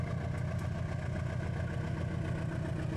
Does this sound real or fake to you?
real